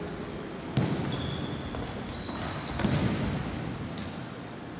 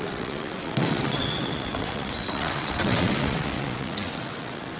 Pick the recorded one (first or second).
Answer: first